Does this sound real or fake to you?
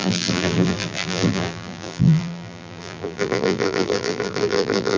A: fake